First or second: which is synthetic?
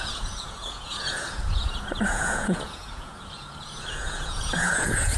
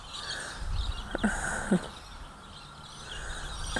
first